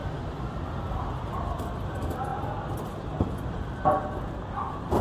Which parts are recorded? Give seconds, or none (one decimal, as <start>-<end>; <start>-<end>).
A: 0.0-5.0